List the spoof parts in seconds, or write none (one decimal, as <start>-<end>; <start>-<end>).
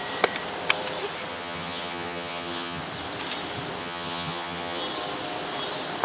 1.3-2.8; 3.8-4.8